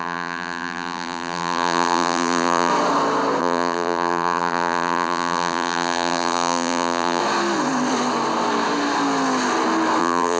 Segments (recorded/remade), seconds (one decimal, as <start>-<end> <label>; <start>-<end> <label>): 0.0-2.7 remade; 2.7-3.4 recorded; 3.4-7.2 remade; 7.2-10.0 recorded; 10.0-10.4 remade